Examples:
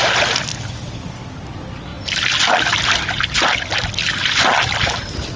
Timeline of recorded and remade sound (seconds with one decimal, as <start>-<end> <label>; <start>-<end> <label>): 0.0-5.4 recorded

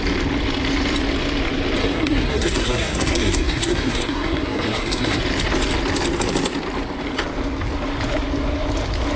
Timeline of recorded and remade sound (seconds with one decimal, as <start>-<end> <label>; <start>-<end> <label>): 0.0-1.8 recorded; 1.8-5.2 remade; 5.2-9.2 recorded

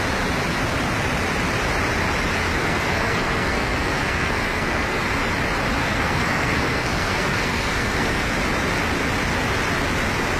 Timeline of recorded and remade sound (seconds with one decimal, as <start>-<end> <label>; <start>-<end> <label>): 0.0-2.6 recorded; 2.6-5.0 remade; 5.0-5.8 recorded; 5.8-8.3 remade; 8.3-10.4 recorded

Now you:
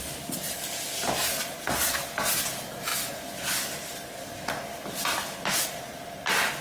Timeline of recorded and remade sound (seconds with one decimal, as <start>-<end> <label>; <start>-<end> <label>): 0.0-6.6 recorded

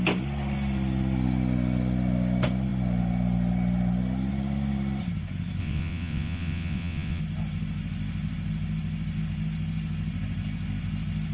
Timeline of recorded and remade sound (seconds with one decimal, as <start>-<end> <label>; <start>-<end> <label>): 0.0-5.6 recorded; 5.6-7.2 remade; 7.2-11.3 recorded